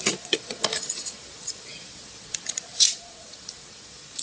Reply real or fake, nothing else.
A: fake